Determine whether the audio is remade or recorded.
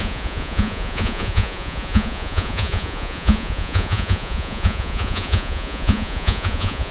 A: remade